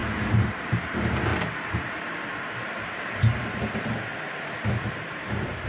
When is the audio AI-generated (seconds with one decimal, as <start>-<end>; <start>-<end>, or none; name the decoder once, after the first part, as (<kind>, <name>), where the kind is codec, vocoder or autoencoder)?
0.6-4.1 (vocoder, BigVGAN v2); 4.9-5.7